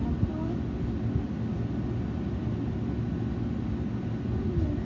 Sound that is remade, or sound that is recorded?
recorded